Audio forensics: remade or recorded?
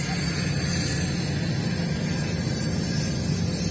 recorded